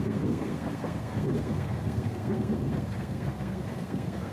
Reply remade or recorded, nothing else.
remade